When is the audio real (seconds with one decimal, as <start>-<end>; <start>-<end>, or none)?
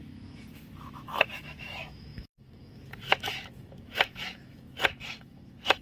none